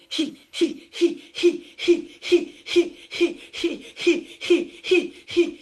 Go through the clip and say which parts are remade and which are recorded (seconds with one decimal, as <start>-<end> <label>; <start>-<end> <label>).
0.0-0.8 remade; 0.8-5.6 recorded

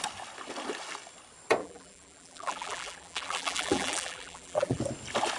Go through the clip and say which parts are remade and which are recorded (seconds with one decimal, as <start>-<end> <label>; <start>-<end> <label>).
0.0-1.6 recorded; 1.6-4.8 remade; 4.8-5.4 recorded

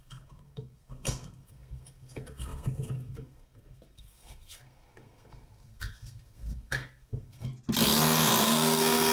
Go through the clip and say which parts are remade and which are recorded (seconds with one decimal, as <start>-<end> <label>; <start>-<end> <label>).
0.0-7.5 remade; 7.5-8.4 recorded; 8.4-9.1 remade

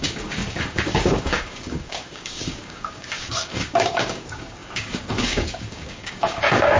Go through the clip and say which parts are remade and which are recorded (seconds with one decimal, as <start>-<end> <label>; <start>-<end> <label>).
0.0-6.8 remade

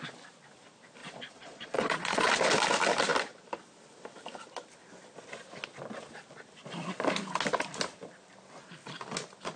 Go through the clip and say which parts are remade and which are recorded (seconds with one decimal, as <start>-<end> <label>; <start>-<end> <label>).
0.0-1.0 recorded; 1.0-2.3 remade; 2.3-9.6 recorded